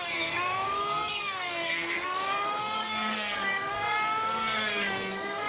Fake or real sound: fake